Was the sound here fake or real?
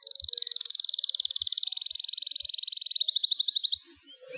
real